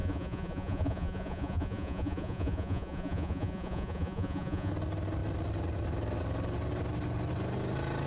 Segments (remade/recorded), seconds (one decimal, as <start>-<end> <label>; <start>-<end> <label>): 0.0-4.7 remade; 4.7-8.1 recorded